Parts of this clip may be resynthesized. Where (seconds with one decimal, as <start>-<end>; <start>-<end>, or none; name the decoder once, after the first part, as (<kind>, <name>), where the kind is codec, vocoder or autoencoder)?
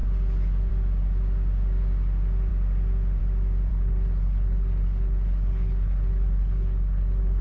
3.7-7.4 (codec, HILCodec)